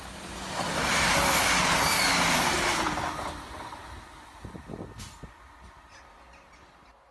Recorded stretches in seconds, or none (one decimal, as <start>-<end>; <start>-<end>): 0.0-7.1